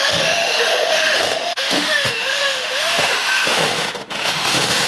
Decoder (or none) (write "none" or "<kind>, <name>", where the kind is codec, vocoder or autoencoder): autoencoder, DAC-VAE